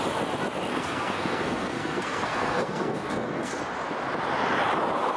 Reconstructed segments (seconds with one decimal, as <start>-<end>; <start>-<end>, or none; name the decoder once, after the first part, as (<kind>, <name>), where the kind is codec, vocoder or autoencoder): 0.7-3.6 (codec, SNAC)